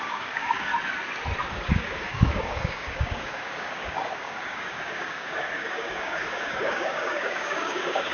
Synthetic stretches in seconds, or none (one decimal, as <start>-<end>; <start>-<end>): 0.0-0.7; 1.5-8.1